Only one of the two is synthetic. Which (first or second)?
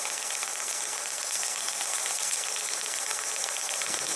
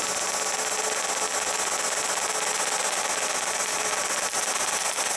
first